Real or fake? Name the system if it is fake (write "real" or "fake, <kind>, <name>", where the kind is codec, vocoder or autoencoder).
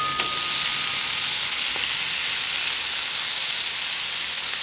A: real